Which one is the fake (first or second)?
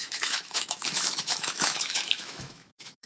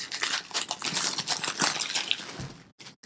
first